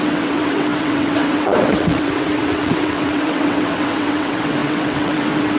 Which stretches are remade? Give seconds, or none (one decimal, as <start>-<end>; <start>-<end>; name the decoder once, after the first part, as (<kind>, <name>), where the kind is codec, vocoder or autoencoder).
0.0-5.6 (vocoder, WaveNeXt)